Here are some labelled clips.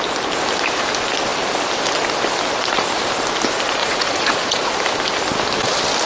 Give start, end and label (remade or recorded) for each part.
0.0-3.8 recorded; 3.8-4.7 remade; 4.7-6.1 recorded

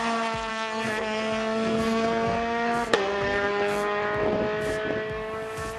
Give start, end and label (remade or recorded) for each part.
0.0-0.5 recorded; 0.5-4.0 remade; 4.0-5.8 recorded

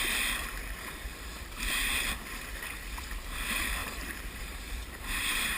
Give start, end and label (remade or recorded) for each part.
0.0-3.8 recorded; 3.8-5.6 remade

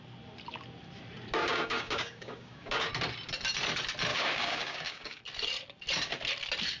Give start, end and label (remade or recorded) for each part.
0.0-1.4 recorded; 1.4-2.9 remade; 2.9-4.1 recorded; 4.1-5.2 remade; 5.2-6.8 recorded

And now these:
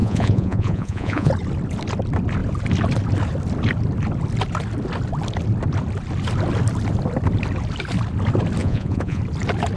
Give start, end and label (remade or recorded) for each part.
0.0-1.3 remade; 1.3-8.6 recorded; 8.6-9.2 remade; 9.2-9.8 recorded

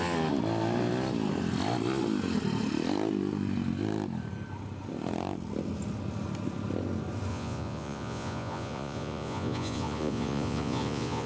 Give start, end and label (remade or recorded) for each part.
0.0-7.3 recorded; 7.3-11.3 remade

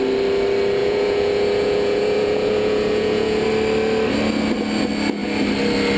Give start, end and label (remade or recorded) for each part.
0.0-0.8 recorded; 0.8-3.5 remade; 3.5-6.0 recorded

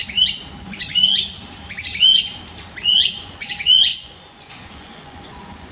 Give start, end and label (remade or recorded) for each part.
0.0-0.6 recorded; 0.6-1.0 remade; 1.0-2.8 recorded; 2.8-5.7 remade